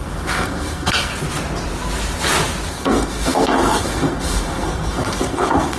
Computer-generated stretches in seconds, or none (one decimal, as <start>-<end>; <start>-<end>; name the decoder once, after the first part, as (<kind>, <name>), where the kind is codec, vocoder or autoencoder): 0.0-1.1 (codec, SNAC); 2.7-5.8

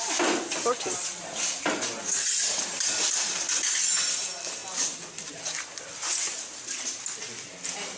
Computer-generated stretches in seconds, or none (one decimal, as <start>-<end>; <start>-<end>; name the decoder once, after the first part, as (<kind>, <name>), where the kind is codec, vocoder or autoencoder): none

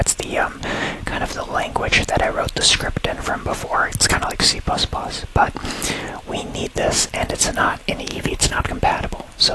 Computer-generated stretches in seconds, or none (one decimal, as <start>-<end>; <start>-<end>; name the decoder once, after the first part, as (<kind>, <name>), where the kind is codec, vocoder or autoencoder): 8.1-8.7 (codec, HILCodec)

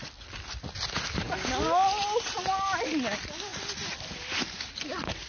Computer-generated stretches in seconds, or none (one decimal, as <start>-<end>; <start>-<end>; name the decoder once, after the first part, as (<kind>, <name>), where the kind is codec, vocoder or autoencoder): none

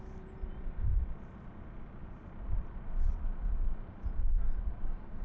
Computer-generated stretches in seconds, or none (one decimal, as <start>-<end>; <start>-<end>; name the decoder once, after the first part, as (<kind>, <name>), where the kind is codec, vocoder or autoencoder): none

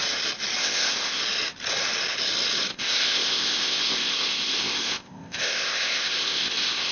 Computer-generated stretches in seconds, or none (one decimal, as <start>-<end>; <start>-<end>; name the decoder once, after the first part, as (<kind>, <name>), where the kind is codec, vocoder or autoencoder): 0.6-1.2 (codec, ZipCodec); 2.7-6.9